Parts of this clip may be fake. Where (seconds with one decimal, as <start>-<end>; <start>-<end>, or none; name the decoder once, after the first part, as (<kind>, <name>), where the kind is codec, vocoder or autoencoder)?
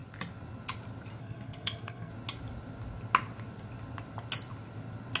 1.2-2.1 (codec, SNAC)